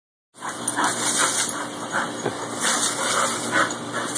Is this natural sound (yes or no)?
yes